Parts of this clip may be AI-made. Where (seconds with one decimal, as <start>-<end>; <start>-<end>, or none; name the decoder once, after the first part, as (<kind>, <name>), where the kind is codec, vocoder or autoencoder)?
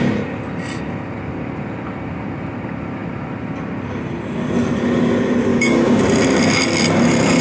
5.5-6.0 (codec, DAC)